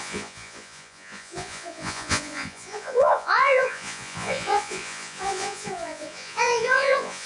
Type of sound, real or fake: fake